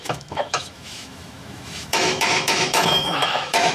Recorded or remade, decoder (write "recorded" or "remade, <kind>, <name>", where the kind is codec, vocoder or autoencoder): remade, autoencoder, DAC-VAE